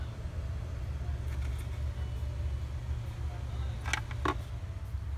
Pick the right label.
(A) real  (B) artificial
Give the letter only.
A